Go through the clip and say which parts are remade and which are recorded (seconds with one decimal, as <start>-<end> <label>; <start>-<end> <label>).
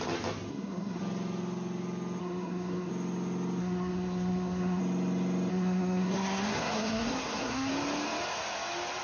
0.0-0.5 recorded; 0.5-1.0 remade; 1.0-2.2 recorded; 2.2-2.9 remade; 2.9-3.6 recorded; 3.6-4.8 remade; 4.8-5.5 recorded; 5.5-7.7 remade; 7.7-9.0 recorded